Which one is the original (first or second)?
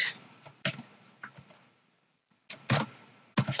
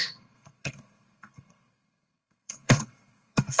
first